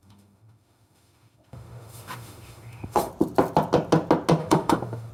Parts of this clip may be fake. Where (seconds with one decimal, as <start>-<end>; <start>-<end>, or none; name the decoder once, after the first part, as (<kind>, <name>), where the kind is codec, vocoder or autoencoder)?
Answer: 0.0-3.1 (autoencoder, DAC-VAE); 4.4-5.1